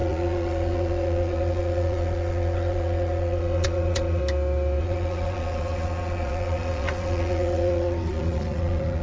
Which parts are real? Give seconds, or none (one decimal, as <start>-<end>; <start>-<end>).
4.2-4.8